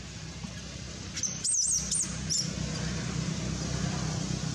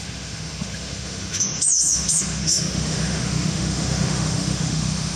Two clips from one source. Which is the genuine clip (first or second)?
first